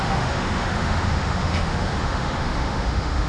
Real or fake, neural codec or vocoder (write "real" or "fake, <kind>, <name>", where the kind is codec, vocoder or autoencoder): fake, autoencoder, DAC-VAE